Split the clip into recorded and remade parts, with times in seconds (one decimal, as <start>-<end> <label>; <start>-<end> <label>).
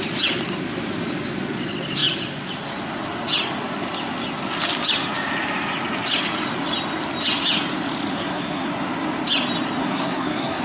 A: 0.0-8.1 recorded; 8.1-8.7 remade; 8.7-9.8 recorded; 9.8-10.6 remade